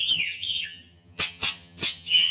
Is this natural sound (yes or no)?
no